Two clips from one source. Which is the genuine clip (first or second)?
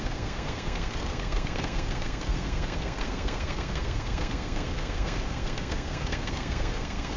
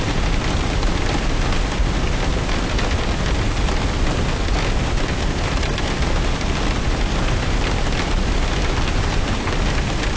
second